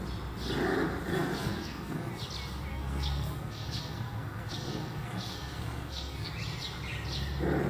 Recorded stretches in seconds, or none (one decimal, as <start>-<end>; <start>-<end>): 0.0-1.1; 2.1-2.7; 6.3-7.7